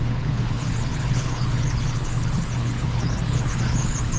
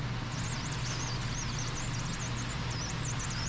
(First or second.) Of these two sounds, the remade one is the first